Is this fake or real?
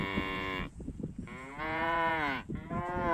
fake